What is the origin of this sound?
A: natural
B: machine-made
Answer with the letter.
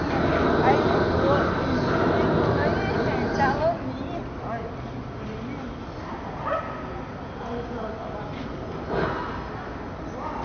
A